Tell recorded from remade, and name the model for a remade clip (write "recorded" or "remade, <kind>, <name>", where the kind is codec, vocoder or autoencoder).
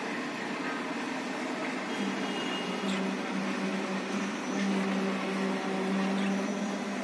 recorded